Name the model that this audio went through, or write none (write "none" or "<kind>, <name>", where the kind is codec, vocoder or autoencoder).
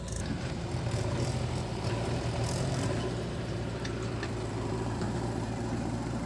vocoder, BigVGAN v2